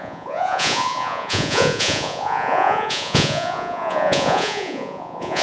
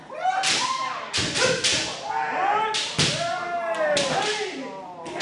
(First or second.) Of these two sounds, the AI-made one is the first